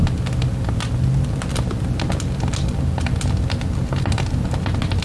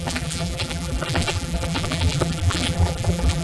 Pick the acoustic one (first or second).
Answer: first